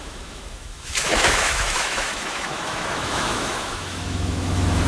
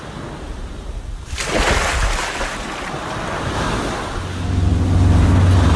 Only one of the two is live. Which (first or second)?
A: second